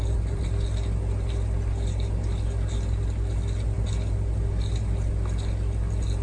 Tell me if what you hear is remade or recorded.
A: recorded